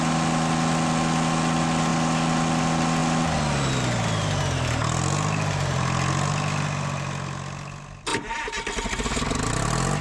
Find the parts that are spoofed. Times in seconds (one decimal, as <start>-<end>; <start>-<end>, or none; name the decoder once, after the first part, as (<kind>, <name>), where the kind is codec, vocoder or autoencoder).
none